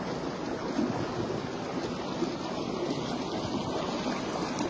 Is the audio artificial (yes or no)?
no